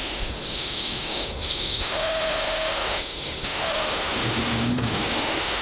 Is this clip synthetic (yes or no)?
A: yes